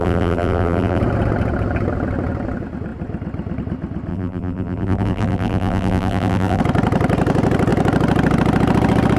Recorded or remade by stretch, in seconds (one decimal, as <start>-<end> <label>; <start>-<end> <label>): 0.0-1.0 remade; 1.0-4.1 recorded; 4.1-6.6 remade; 6.6-9.2 recorded